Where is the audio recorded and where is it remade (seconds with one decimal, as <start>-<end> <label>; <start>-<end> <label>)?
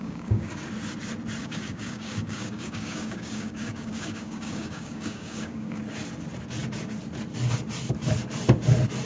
0.0-0.5 remade; 0.5-1.4 recorded; 1.4-5.8 remade; 5.8-9.1 recorded